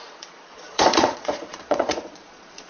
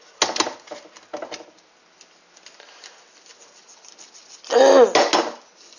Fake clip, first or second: first